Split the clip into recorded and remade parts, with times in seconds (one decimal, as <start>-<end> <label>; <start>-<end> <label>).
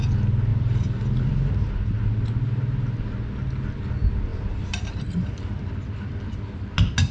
0.0-0.5 recorded; 0.5-1.5 remade; 1.5-4.3 recorded; 4.3-6.4 remade; 6.4-7.1 recorded